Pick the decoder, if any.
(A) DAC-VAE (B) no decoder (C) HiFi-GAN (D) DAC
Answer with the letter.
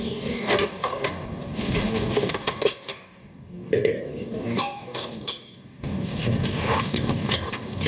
D